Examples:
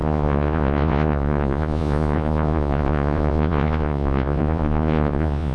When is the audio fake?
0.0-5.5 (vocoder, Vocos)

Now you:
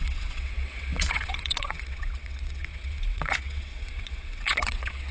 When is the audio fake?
0.0-5.1 (vocoder, WaveNeXt)

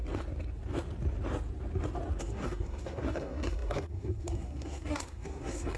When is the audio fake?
2.2-5.8 (codec, SNAC)

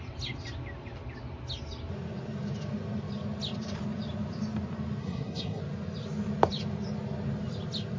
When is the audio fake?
5.0-5.6 (codec, SNAC)

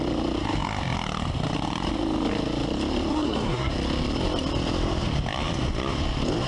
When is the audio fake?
3.1-3.7 (codec, SNAC)

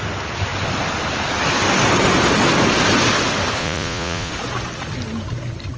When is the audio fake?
3.6-4.3 (vocoder, Vocos)

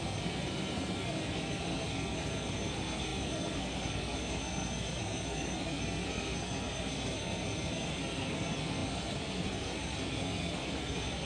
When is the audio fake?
0.0-11.3 (codec, SNAC)